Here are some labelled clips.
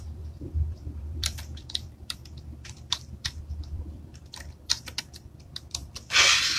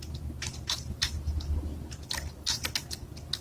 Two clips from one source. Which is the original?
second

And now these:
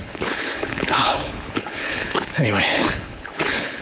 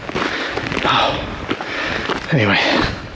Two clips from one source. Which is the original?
second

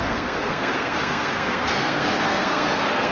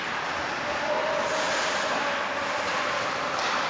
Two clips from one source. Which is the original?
second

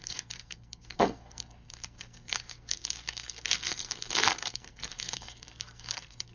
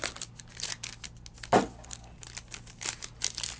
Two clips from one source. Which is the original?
second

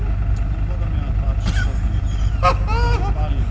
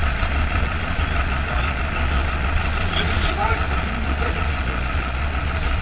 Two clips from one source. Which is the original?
first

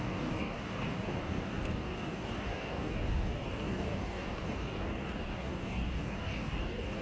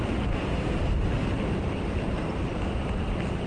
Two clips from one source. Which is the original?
second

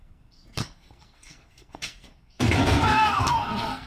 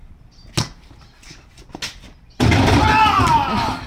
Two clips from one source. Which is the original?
second